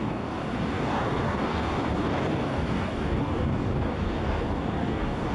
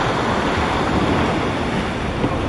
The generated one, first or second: first